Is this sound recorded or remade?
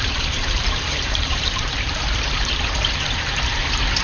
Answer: remade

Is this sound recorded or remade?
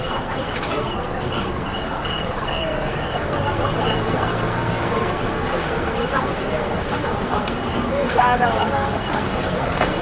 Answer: remade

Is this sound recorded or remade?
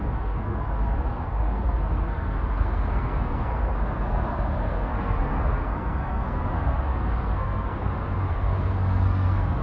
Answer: remade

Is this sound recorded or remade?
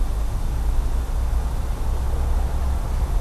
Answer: recorded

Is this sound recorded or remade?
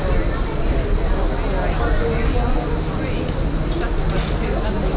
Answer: recorded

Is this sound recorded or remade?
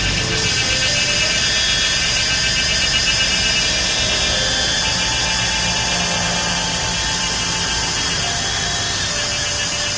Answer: recorded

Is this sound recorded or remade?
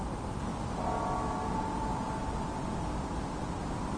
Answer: recorded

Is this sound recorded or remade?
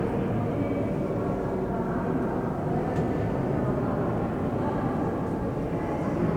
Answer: recorded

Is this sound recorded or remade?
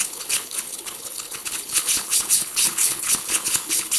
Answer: remade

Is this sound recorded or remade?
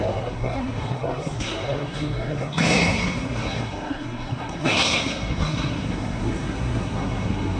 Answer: remade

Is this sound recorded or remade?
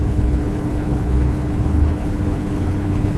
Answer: remade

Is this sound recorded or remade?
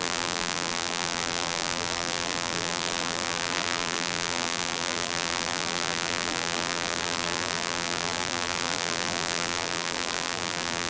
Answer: remade